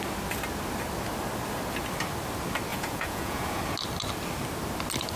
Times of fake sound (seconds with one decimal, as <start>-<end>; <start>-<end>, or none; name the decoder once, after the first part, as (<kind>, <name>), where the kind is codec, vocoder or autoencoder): 2.7-3.6 (vocoder, Vocos)